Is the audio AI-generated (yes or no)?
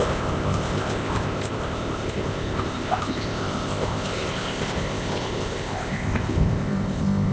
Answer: yes